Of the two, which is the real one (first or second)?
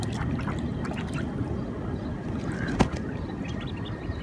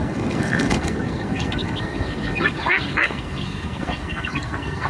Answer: first